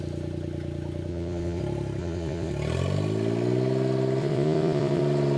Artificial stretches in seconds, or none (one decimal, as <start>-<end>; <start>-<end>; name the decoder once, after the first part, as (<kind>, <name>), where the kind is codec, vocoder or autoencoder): 1.1-1.6 (vocoder, Vocos); 2.0-2.5; 4.2-5.0